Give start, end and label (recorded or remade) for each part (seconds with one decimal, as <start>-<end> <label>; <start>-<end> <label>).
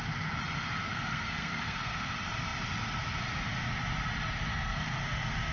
0.0-0.8 recorded; 0.8-2.1 remade; 2.1-4.5 recorded; 4.5-5.0 remade; 5.0-5.5 recorded